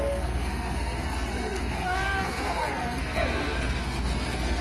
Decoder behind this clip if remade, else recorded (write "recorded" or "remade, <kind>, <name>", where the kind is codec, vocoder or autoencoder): remade, codec, SNAC